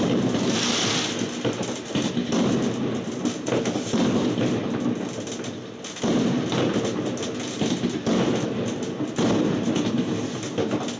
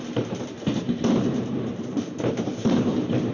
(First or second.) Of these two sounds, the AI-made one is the second